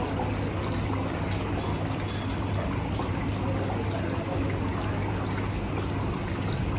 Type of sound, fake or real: real